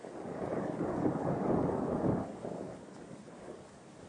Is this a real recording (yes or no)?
no